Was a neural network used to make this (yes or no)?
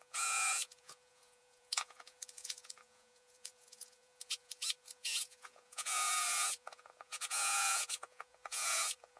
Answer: yes